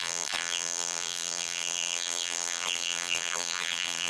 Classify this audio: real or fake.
fake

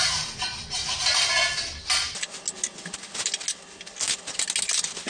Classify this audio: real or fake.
real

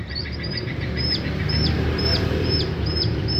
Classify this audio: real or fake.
fake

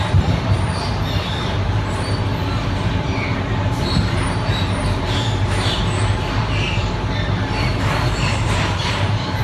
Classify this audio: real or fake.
fake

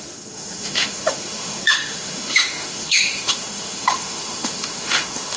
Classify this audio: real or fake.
fake